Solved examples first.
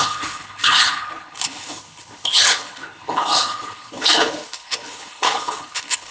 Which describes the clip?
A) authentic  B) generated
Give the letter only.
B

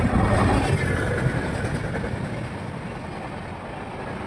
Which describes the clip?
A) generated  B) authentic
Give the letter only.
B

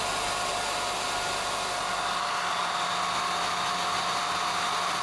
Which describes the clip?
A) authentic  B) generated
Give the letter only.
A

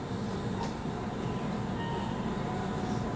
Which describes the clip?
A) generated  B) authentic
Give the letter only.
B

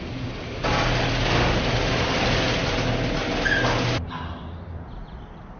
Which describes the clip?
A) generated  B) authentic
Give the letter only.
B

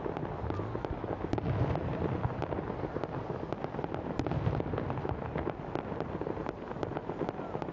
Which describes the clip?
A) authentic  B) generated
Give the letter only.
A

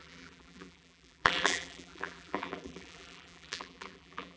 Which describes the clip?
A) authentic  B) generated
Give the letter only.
B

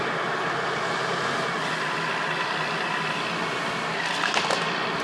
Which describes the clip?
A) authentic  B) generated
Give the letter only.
A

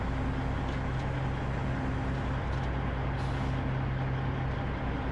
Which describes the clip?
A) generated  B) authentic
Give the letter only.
B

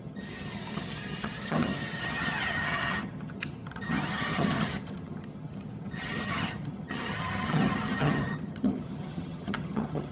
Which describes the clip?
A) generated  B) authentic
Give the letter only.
A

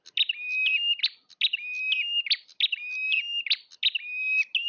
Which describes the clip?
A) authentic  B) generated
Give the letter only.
A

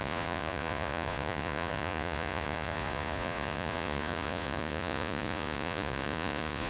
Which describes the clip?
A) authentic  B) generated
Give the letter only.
B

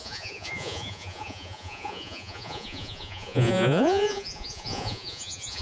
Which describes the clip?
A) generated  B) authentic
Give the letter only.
A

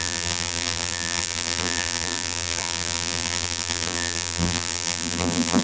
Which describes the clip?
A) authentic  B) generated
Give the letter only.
B